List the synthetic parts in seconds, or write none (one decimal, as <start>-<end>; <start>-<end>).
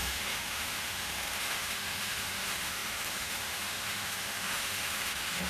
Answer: 0.0-5.5